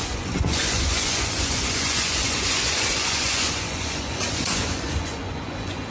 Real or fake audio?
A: fake